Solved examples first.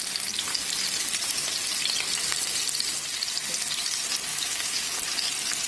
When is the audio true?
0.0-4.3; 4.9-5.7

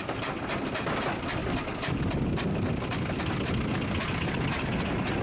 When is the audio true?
0.0-5.2

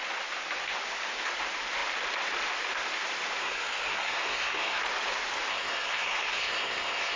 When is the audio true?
0.0-3.4; 4.8-5.5

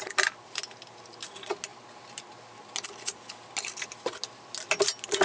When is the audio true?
0.0-5.2

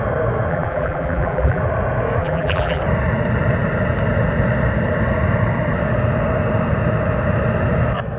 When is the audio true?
0.0-0.5; 1.6-2.2; 2.8-8.2

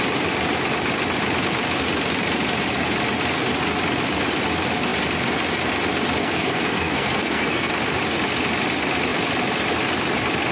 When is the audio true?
0.0-6.2; 7.7-10.5

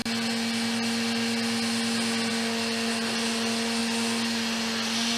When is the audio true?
0.0-5.2